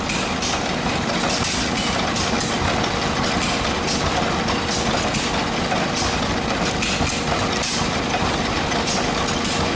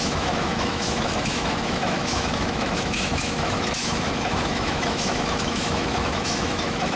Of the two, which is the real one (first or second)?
first